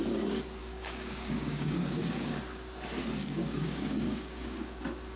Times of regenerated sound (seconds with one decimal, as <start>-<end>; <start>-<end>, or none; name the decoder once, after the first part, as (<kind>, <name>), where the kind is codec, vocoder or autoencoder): 0.6-2.4 (codec, DAC); 3.2-4.8